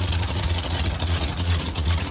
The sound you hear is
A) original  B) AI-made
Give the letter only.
B